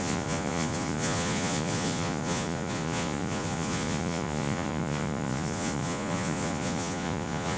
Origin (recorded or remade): remade